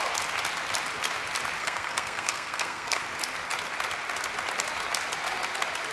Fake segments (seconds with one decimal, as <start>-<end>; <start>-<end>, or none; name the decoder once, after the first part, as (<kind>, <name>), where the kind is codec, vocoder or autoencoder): 1.6-3.0 (codec, SNAC)